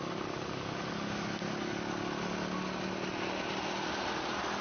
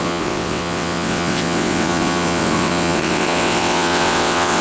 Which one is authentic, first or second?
first